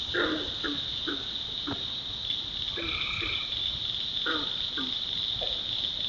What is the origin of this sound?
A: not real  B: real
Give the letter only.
B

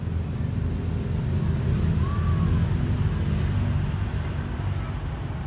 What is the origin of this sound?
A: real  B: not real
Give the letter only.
A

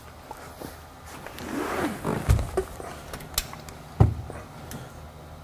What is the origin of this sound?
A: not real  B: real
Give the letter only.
B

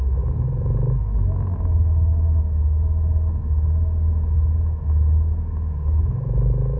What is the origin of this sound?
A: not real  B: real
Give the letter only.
A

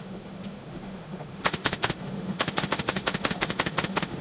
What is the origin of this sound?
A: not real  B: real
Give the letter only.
A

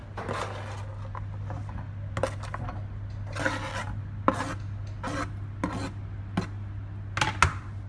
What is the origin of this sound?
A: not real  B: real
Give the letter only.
B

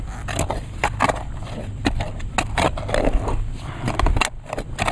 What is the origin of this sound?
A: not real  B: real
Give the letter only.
B